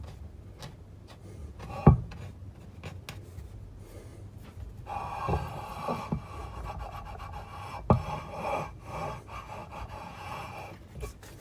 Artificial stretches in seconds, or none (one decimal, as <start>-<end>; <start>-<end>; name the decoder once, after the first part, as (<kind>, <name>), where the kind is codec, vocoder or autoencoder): 1.4-2.1 (vocoder, Vocos); 9.6-10.5